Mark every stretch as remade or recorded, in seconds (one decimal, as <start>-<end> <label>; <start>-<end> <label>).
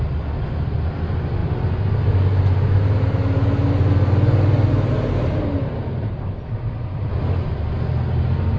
0.0-8.6 recorded